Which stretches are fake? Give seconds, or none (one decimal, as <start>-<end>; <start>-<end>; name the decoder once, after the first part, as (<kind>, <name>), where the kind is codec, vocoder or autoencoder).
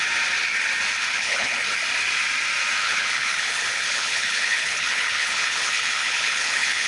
1.0-1.6 (codec, HILCodec); 2.8-6.9